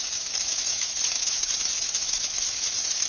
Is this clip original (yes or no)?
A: no